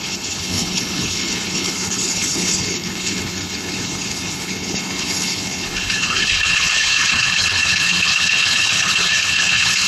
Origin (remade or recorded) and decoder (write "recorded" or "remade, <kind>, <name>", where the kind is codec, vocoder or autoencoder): remade, codec, HILCodec